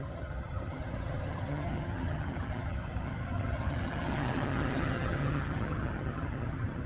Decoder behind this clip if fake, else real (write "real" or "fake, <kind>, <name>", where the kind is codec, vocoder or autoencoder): fake, vocoder, HiFi-GAN